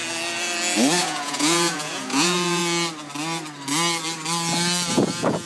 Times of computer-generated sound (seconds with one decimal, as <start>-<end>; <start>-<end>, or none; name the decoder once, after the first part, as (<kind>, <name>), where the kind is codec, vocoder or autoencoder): 1.0-2.6 (vocoder, Vocos); 4.9-5.5